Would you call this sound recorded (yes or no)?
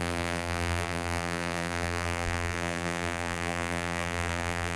no